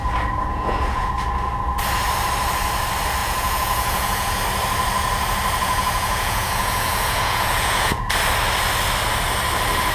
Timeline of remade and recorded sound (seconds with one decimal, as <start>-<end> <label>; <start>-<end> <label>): 0.0-0.5 recorded; 0.5-1.1 remade; 1.1-3.2 recorded; 3.2-4.4 remade; 4.4-5.6 recorded; 5.6-8.1 remade; 8.1-9.9 recorded